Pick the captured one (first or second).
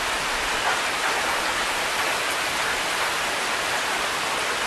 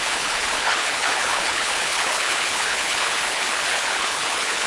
first